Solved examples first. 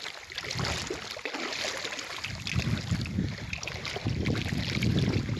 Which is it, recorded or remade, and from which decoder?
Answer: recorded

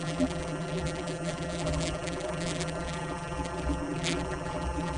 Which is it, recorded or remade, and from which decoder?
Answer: remade, vocoder, BigVGAN v2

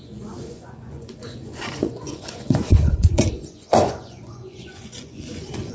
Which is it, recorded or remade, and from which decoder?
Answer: remade, vocoder, Vocos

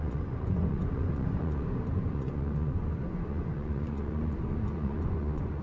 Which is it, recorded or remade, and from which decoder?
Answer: remade, vocoder, Vocos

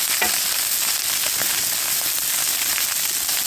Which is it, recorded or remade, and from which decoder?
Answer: recorded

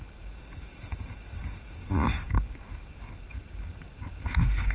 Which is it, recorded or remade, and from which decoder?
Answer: remade, codec, DAC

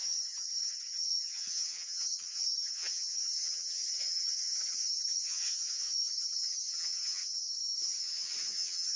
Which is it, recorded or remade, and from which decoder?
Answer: remade, vocoder, HiFi-GAN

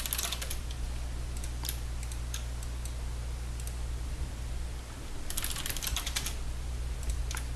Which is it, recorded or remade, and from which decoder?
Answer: recorded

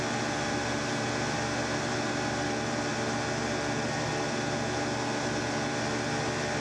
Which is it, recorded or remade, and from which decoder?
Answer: recorded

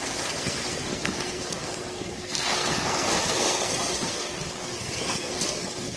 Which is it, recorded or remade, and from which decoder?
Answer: remade, codec, SNAC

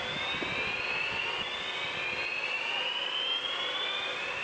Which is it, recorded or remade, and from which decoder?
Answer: recorded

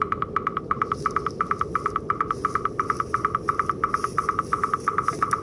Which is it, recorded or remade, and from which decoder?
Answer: remade, vocoder, BigVGAN v2